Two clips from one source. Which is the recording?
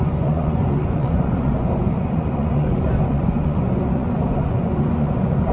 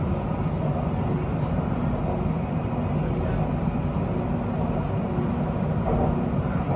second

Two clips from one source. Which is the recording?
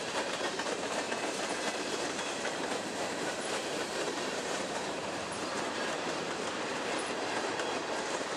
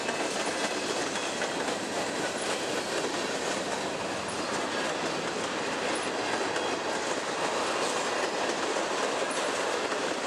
second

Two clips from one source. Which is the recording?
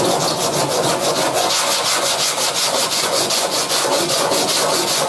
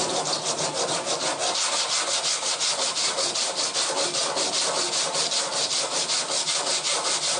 second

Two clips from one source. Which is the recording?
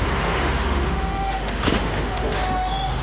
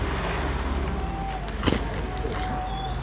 second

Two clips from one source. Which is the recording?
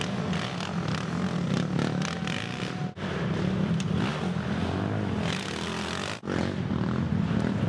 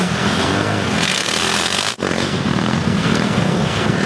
first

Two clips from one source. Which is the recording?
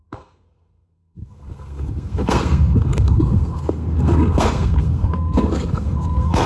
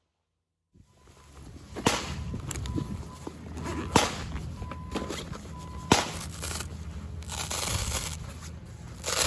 second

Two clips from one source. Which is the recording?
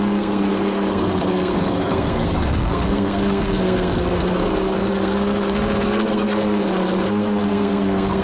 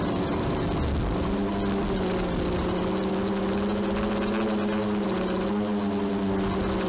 second